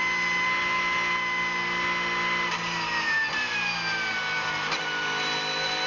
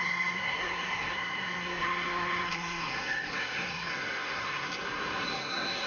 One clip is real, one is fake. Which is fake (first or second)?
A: second